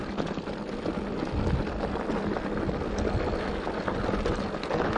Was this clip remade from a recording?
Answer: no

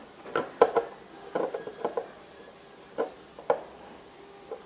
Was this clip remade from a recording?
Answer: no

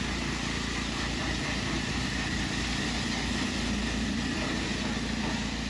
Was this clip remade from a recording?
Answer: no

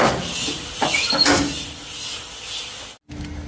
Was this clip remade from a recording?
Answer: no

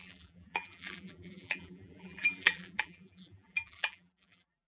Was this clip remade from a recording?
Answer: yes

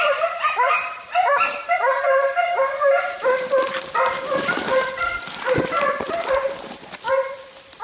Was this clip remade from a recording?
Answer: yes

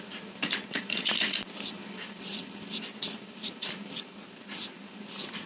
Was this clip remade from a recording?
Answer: yes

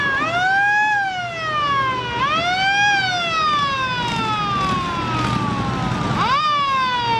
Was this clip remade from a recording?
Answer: no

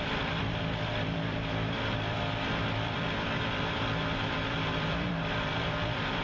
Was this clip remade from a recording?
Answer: yes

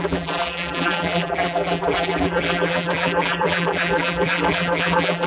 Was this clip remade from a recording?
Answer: yes